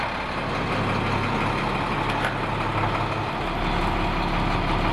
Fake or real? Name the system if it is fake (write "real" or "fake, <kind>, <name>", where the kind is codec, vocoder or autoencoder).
real